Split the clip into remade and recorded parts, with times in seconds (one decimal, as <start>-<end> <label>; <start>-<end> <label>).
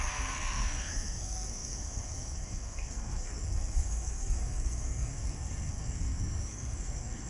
0.0-7.3 remade